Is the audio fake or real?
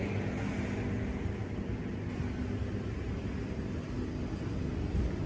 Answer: real